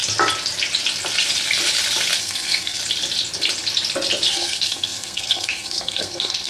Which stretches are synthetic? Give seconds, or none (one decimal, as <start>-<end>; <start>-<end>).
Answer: 2.2-2.8; 4.3-6.5